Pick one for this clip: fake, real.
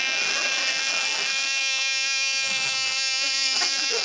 fake